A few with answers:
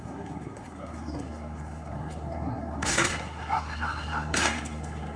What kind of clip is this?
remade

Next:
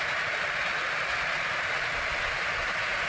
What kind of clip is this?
recorded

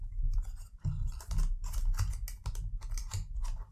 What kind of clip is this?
recorded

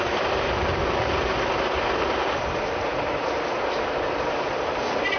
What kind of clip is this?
remade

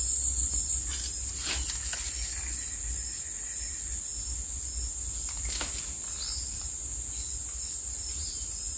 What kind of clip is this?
recorded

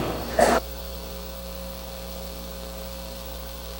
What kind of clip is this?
remade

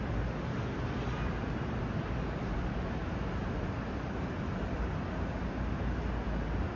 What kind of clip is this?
recorded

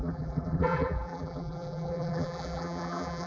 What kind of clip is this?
remade